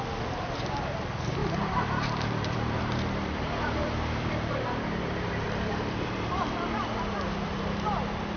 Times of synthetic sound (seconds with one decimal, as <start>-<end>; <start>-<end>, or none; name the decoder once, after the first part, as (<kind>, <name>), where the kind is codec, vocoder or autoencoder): 1.4-6.4 (vocoder, BigVGAN v2)